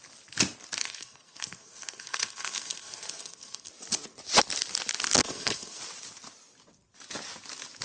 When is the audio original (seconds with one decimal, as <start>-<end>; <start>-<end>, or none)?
0.0-0.8; 3.7-5.2; 5.8-7.8